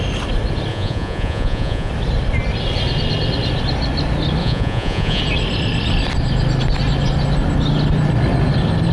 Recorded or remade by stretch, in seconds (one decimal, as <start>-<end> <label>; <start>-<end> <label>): 0.0-0.7 recorded; 0.7-1.9 remade; 1.9-4.4 recorded; 4.4-5.2 remade; 5.2-8.9 recorded